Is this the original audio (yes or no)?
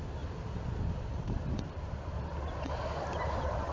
yes